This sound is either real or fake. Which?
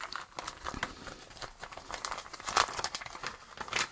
real